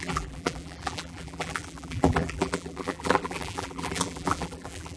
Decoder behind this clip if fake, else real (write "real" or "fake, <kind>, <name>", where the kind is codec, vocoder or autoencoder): fake, vocoder, BigVGAN v2